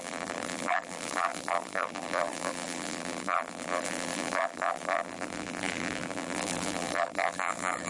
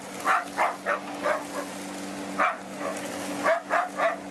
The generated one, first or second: first